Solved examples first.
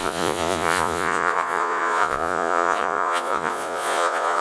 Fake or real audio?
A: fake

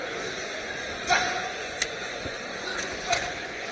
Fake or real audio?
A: fake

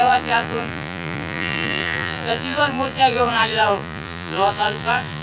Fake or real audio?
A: fake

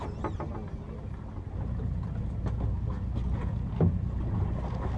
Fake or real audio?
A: real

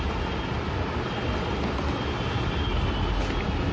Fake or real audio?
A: real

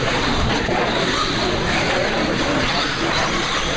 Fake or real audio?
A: fake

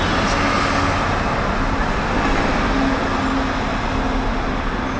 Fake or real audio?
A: real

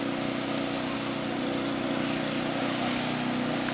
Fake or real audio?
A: real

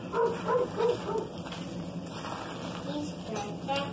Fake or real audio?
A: real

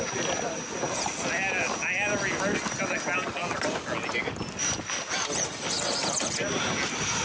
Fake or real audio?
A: real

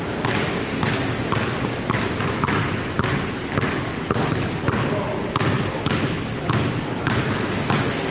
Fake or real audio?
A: real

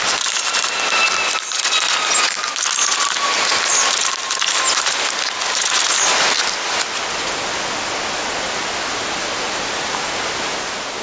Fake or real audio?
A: real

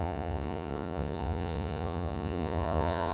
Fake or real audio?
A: fake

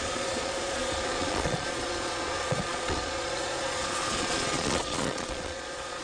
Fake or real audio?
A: fake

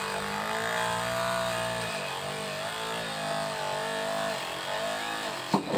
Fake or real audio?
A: real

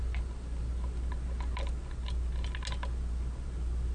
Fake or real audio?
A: real